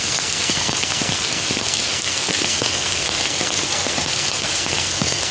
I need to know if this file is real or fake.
fake